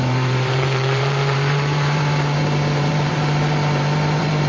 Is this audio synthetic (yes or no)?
yes